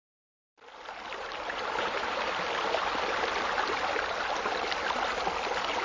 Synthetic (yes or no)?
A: no